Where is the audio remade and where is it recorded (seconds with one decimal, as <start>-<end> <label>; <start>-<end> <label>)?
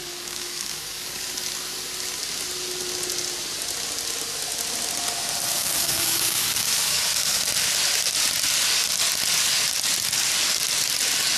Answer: 0.0-1.3 remade; 1.3-5.5 recorded; 5.5-7.4 remade; 7.4-11.4 recorded